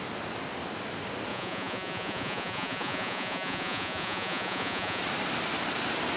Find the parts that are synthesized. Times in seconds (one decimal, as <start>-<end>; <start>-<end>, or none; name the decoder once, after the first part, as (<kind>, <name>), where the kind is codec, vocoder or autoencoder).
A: 1.3-5.0 (vocoder, Vocos)